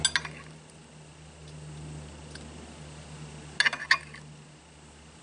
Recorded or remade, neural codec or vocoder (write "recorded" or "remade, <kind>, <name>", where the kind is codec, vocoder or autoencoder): recorded